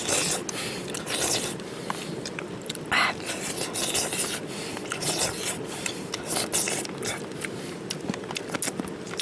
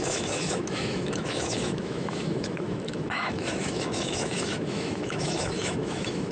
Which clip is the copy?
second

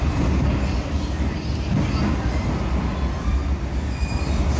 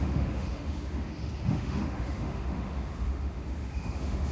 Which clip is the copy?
second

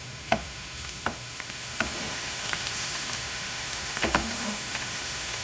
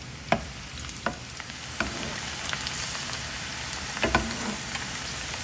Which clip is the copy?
first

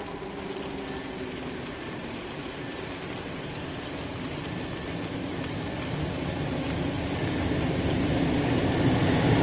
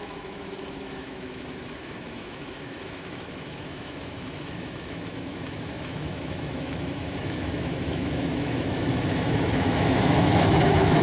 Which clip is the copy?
second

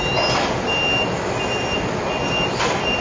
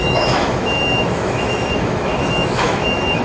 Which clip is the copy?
second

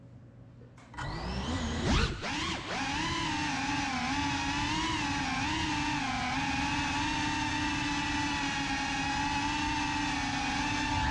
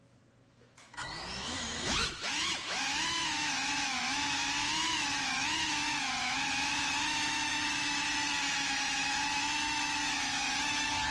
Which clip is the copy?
second